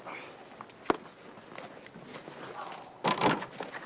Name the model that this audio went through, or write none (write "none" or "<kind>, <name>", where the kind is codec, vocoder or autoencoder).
none